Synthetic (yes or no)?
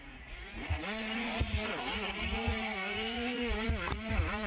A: yes